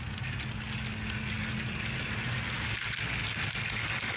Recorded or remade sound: recorded